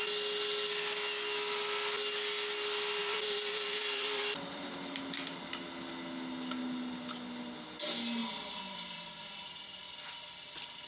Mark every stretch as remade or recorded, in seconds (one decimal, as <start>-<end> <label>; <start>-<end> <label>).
0.0-3.0 recorded; 3.0-5.9 remade; 5.9-8.2 recorded; 8.2-9.2 remade; 9.2-10.9 recorded